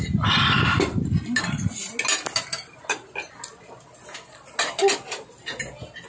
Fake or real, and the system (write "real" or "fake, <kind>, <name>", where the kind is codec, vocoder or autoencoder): real